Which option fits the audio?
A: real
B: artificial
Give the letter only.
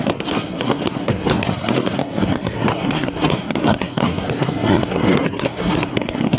B